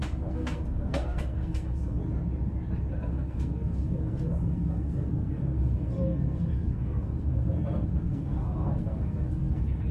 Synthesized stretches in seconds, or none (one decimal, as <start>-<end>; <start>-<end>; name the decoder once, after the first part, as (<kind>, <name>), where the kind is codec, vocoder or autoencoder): 0.0-2.0 (codec, SNAC); 2.9-9.9